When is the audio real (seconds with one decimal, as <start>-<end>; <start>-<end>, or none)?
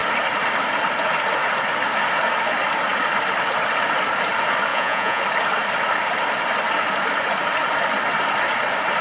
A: 0.0-4.7; 5.2-9.0